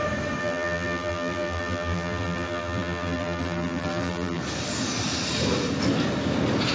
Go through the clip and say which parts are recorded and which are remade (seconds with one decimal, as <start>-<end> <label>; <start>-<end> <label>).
0.0-0.4 recorded; 0.4-4.4 remade; 4.4-6.7 recorded